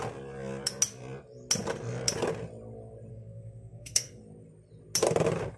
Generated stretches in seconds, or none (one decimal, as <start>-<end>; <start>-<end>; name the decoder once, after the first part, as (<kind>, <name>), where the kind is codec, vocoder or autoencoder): 3.1-4.2 (codec, SNAC)